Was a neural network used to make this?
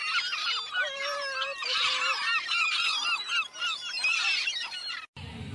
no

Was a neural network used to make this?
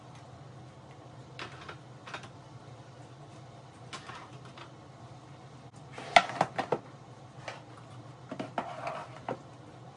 no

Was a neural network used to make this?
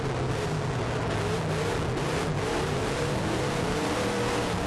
no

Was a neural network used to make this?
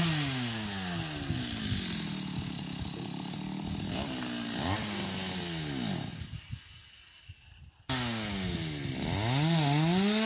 no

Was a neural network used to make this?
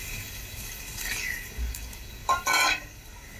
yes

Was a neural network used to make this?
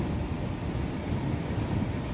no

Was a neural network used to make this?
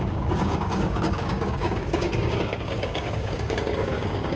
yes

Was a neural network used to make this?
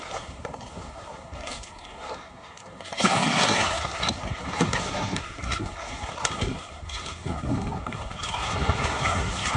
yes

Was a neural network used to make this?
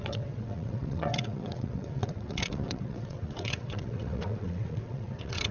yes